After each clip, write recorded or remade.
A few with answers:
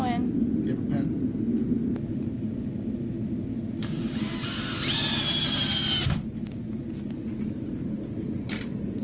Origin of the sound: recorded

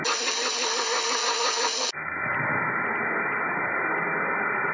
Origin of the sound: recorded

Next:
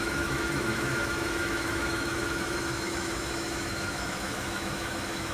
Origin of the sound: remade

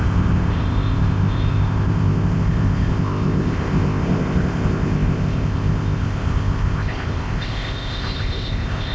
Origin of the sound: remade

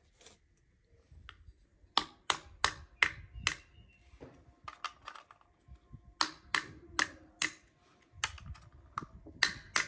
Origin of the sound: recorded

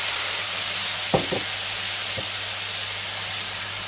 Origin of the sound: remade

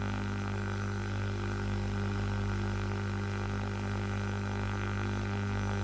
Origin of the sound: remade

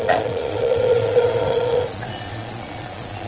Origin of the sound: remade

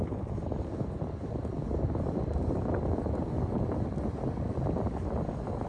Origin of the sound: recorded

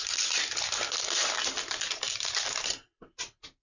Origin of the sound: recorded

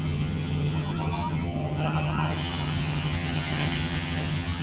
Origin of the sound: remade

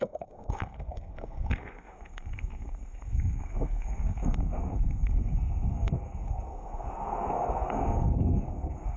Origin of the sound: remade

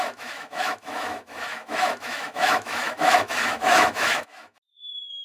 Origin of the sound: remade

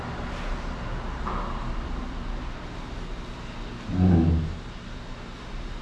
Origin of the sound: recorded